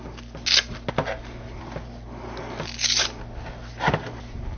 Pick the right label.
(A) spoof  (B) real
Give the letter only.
B